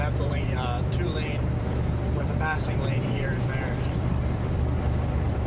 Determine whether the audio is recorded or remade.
remade